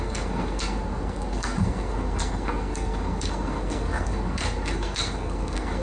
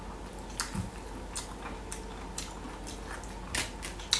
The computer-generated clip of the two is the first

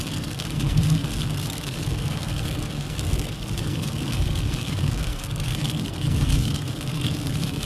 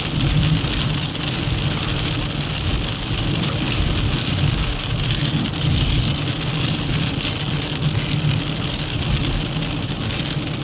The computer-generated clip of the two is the first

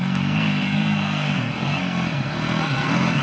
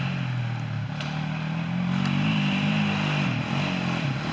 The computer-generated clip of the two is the first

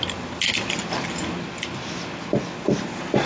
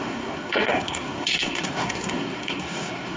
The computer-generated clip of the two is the second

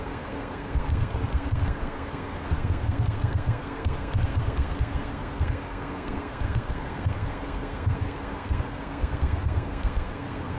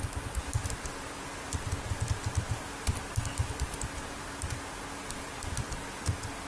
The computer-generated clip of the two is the first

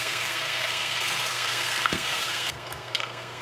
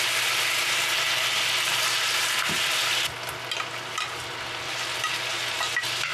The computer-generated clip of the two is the first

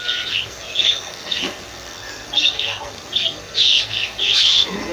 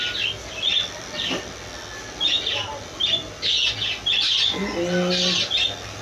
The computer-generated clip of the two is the first